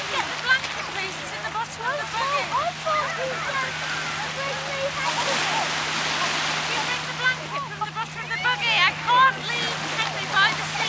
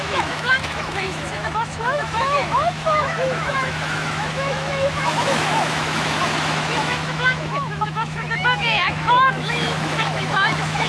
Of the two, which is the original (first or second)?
first